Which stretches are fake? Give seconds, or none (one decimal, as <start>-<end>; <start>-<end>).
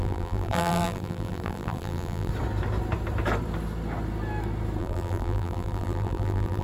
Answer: 0.0-2.3; 4.8-6.6